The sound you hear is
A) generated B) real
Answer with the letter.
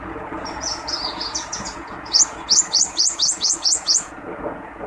A